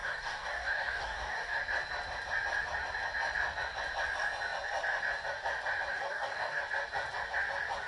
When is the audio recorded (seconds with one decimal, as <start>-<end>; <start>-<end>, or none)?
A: 1.6-5.9; 6.6-7.9